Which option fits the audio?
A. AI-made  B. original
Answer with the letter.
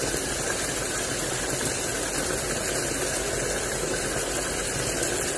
B